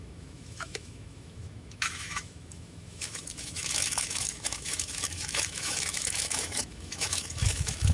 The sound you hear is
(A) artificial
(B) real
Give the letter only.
A